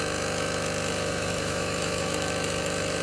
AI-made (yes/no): yes